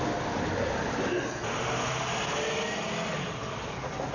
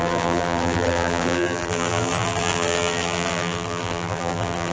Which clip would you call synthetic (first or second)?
second